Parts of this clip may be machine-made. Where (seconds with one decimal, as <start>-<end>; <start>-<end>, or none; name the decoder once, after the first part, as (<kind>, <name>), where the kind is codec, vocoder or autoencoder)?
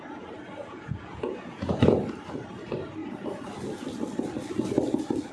0.6-1.8 (vocoder, Vocos)